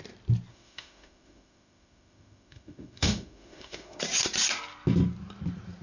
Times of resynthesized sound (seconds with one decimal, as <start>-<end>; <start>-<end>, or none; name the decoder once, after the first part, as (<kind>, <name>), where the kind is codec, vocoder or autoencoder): 0.5-4.0 (autoencoder, DAC-VAE)